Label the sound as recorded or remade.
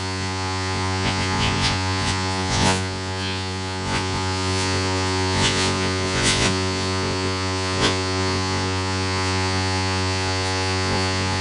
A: remade